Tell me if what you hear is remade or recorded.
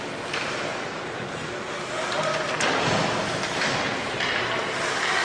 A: recorded